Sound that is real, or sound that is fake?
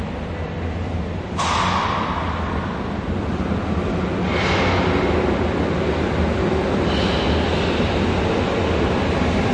real